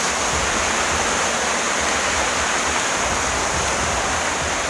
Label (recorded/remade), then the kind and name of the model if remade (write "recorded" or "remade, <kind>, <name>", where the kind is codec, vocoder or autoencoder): remade, vocoder, BigVGAN v2